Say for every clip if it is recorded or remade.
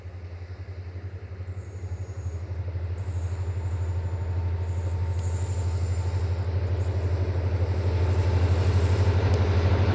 recorded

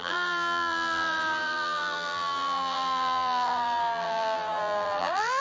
remade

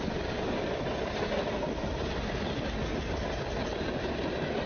recorded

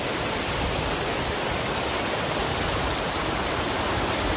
recorded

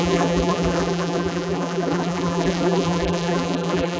remade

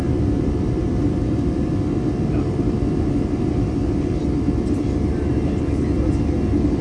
remade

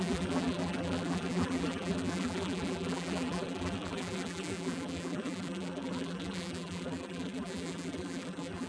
remade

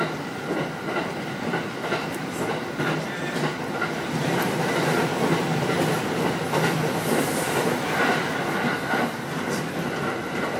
recorded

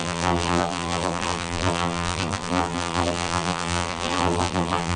remade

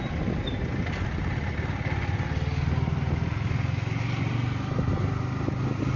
recorded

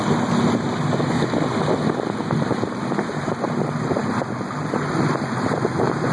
recorded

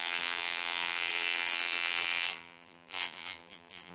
remade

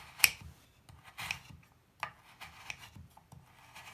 recorded